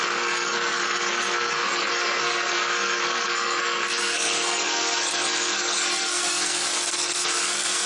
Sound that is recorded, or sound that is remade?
remade